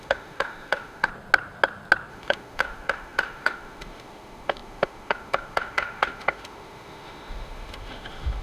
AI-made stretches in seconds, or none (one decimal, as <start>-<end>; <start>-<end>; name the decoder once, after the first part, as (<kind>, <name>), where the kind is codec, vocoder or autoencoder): 0.0-1.1 (autoencoder, DAC-VAE); 2.1-8.4